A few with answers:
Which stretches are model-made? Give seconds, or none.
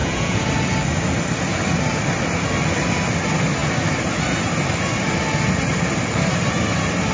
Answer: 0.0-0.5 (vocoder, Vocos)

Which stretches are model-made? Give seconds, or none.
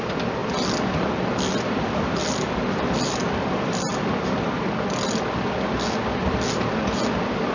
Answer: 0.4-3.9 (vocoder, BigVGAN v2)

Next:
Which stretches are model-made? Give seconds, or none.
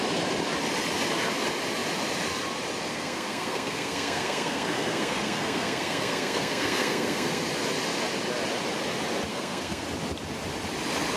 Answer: 2.9-7.4 (codec, SNAC); 9.3-9.8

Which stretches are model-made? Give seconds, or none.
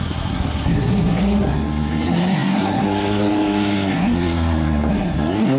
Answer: 0.0-5.6 (codec, SNAC)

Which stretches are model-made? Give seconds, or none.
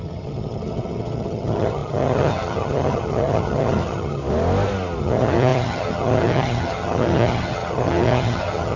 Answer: 0.0-4.2 (vocoder, HiFi-GAN); 5.0-8.8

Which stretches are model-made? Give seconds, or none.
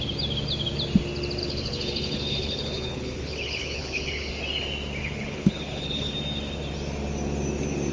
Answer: 1.4-4.3 (codec, HILCodec); 5.0-6.1